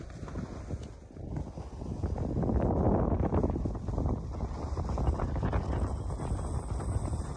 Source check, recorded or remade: recorded